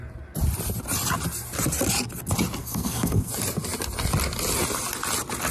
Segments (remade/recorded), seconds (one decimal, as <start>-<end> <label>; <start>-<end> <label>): 0.0-2.6 recorded; 2.6-3.3 remade; 3.3-5.5 recorded